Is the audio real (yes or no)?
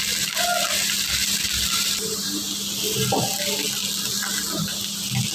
yes